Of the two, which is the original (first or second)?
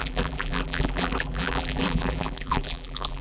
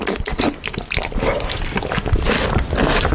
second